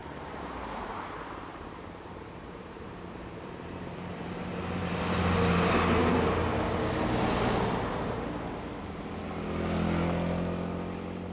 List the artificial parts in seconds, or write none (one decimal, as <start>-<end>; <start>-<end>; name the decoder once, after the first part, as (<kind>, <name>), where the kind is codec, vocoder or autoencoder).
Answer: 0.0-0.9 (vocoder, BigVGAN v2); 1.5-5.0